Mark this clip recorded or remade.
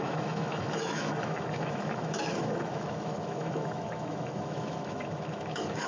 remade